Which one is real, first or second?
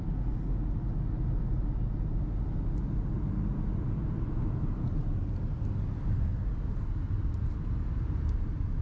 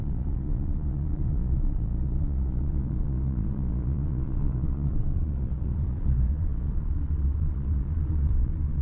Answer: first